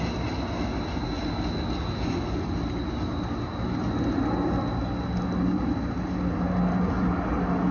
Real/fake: real